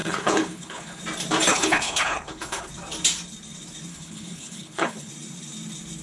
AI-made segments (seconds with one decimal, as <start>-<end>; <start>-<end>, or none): 0.0-1.0; 1.5-2.7; 3.9-5.1